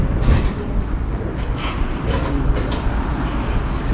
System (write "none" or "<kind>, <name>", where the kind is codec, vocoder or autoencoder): none